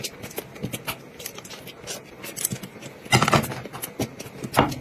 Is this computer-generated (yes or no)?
no